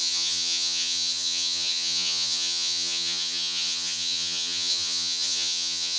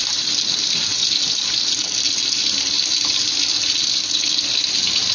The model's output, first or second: first